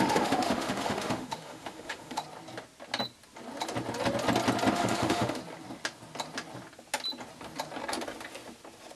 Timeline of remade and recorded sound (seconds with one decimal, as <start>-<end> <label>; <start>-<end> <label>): 0.0-2.2 remade; 2.2-4.7 recorded; 4.7-5.4 remade; 5.4-9.0 recorded